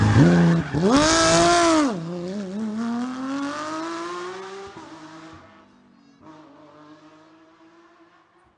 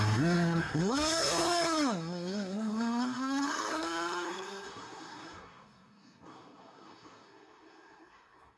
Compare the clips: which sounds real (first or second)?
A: first